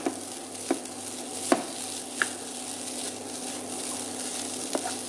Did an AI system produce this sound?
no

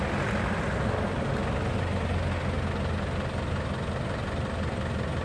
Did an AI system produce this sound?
no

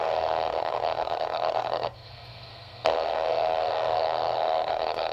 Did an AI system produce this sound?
yes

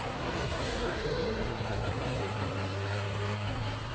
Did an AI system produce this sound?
yes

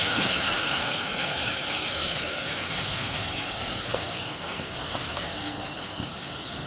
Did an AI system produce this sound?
yes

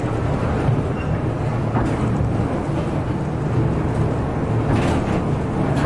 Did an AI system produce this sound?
no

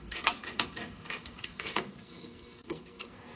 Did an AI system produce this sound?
yes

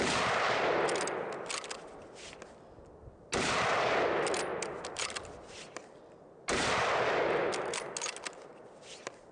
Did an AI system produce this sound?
no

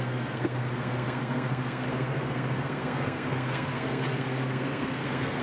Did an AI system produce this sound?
yes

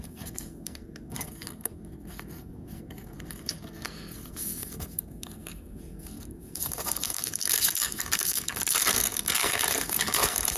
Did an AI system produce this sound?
yes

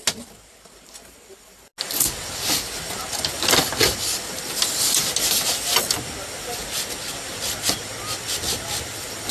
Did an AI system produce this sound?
no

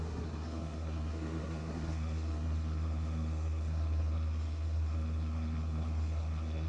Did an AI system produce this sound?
yes